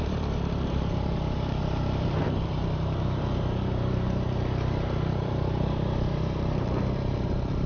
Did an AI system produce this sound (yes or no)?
yes